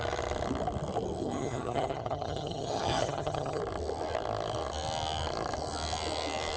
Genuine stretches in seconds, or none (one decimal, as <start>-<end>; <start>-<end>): 0.0-1.2; 3.6-6.6